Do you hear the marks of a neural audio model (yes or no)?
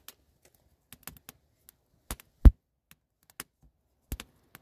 no